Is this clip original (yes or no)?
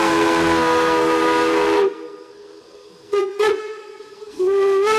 no